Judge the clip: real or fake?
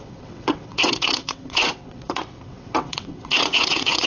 fake